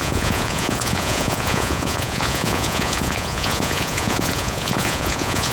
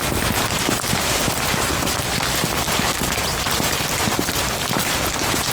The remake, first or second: first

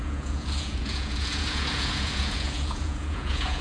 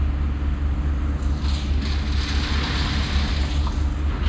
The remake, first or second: first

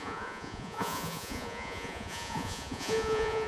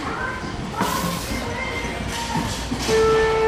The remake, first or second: first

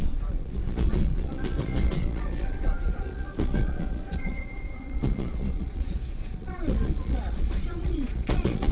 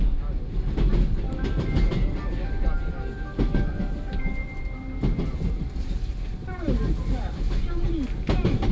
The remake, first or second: first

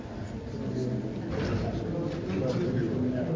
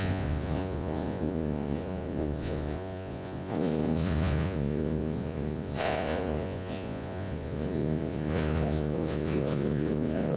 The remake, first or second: second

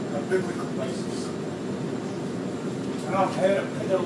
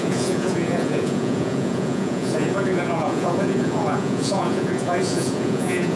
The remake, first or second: second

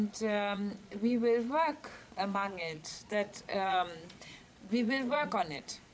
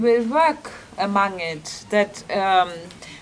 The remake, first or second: first